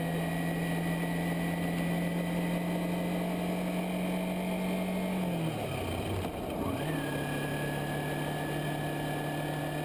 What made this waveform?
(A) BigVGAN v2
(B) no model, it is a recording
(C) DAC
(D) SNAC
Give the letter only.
B